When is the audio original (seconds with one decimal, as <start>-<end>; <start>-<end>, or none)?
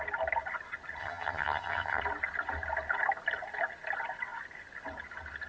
0.0-1.0; 2.0-5.5